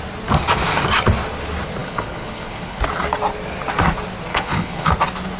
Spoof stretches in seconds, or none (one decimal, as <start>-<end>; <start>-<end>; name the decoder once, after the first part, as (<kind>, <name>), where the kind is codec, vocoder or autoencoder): 1.8-2.8 (codec, HILCodec); 4.3-4.9